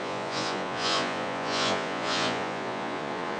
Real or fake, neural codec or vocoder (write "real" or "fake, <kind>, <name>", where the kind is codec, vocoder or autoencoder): fake, vocoder, Vocos